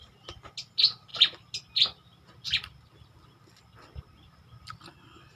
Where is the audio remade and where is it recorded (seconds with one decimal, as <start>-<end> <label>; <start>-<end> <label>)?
0.0-5.4 recorded